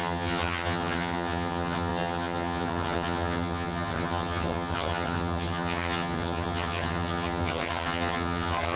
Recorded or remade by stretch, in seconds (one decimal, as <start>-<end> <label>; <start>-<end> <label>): 0.0-8.8 remade